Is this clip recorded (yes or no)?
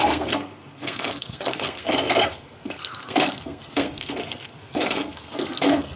no